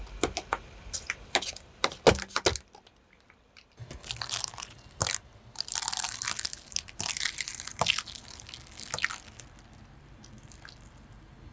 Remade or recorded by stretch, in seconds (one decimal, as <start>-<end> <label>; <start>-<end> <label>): 0.0-11.5 recorded